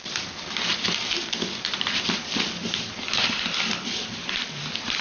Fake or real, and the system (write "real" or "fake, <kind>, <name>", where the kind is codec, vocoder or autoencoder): real